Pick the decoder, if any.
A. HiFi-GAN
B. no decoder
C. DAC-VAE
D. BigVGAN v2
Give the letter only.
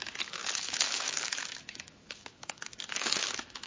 C